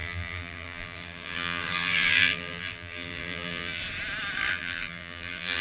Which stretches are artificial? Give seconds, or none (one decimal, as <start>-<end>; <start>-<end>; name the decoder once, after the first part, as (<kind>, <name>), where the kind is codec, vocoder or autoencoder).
0.0-3.8 (vocoder, BigVGAN v2); 4.5-5.6